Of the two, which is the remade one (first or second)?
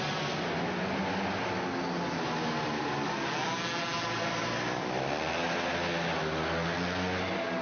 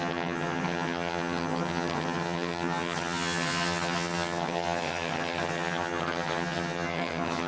second